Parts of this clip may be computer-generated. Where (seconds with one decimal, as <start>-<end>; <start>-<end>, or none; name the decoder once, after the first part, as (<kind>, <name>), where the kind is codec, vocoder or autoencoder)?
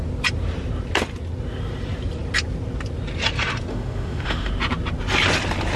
3.7-4.5 (autoencoder, DAC-VAE)